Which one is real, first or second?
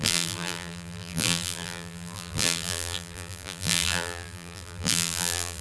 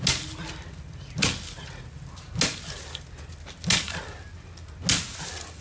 second